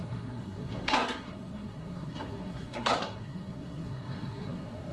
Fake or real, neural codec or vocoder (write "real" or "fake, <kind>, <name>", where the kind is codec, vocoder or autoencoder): fake, codec, SNAC